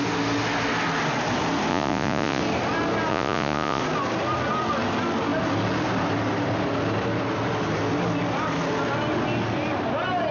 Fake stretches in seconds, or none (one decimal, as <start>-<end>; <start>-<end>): 1.7-2.4; 3.1-3.8